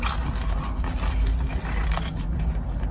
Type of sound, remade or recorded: recorded